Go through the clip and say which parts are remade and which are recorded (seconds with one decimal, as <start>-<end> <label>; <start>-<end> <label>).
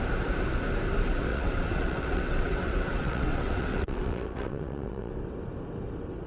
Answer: 0.0-1.3 recorded; 1.3-5.1 remade; 5.1-6.3 recorded